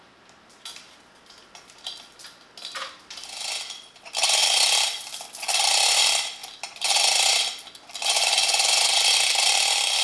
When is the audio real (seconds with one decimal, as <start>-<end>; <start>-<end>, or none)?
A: 0.0-10.0